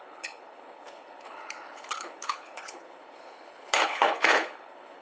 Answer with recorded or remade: remade